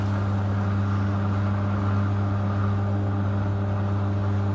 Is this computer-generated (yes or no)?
no